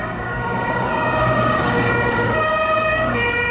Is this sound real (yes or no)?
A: no